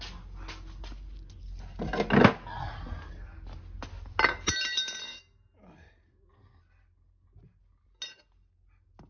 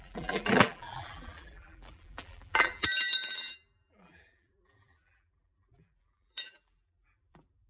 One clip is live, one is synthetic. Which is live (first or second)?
first